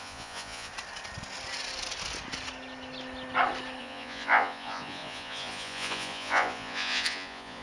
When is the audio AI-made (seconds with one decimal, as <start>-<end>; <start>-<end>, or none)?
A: 0.0-0.7; 3.8-7.6